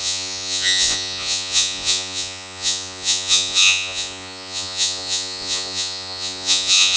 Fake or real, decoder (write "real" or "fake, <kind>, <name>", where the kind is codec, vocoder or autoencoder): fake, vocoder, Vocos